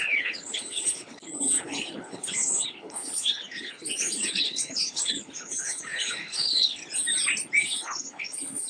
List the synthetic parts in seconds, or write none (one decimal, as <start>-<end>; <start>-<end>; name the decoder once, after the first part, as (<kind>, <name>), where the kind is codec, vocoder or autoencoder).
0.0-6.8 (codec, HILCodec); 7.6-8.7